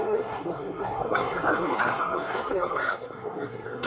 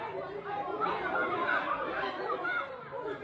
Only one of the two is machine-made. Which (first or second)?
first